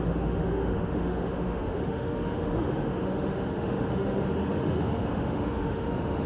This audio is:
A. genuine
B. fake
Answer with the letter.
B